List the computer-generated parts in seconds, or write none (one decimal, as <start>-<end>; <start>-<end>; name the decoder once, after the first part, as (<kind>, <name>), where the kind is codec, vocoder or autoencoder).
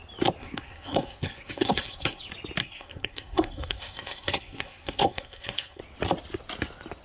0.4-2.2 (codec, SNAC); 2.6-5.8